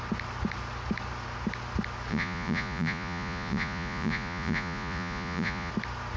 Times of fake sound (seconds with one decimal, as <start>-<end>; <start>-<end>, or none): 2.1-5.7